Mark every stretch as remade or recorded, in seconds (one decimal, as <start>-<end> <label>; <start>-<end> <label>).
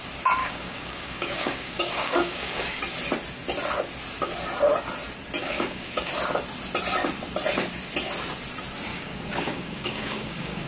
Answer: 0.0-0.4 recorded; 0.4-2.8 remade; 2.8-5.4 recorded; 5.4-6.1 remade; 6.1-8.9 recorded; 8.9-10.7 remade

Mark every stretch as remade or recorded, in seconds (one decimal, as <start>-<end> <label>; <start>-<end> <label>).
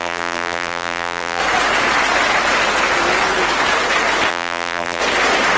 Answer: 0.0-1.4 remade; 1.4-4.3 recorded; 4.3-5.0 remade; 5.0-5.6 recorded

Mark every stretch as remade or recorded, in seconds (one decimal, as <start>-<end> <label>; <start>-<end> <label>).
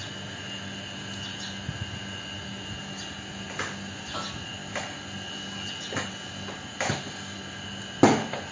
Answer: 0.0-8.5 recorded